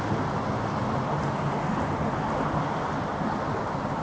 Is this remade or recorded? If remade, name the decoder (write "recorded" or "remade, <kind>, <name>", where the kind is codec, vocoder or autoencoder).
recorded